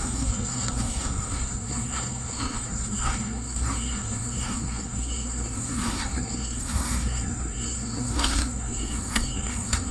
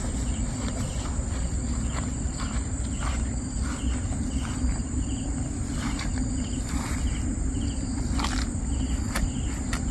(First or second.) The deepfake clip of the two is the first